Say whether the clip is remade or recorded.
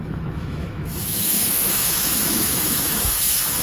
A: remade